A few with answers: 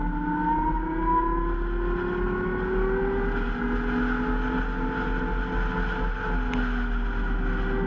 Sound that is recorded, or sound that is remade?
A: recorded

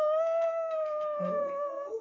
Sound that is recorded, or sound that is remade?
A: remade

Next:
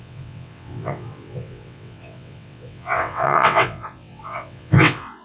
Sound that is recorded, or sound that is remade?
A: remade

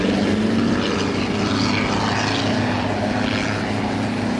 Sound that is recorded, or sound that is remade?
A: recorded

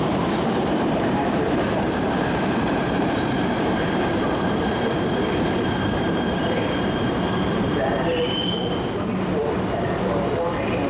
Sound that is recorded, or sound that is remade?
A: remade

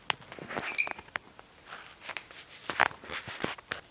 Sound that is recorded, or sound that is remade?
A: recorded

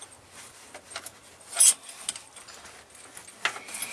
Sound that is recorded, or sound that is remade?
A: recorded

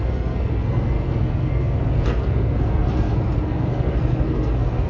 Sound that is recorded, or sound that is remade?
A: remade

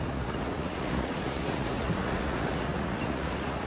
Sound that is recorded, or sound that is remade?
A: remade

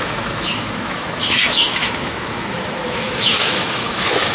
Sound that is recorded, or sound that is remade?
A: remade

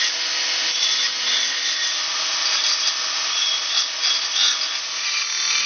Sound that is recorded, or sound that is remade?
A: recorded